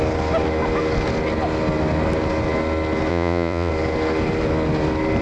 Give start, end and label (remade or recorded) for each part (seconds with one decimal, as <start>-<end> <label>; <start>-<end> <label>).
0.0-3.1 recorded; 3.1-3.7 remade; 3.7-5.2 recorded